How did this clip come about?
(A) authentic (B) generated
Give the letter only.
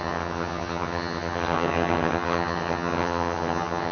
B